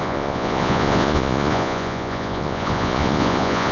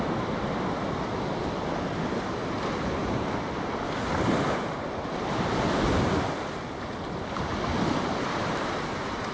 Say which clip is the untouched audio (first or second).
second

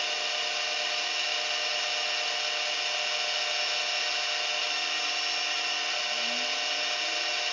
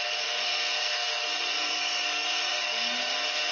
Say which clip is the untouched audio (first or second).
first